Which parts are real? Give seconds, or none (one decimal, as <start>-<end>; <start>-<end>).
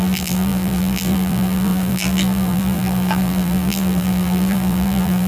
none